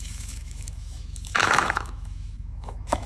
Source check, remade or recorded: remade